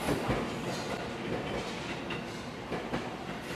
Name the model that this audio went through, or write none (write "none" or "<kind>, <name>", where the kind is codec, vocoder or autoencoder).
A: none